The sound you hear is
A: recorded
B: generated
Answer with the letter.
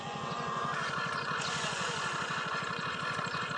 B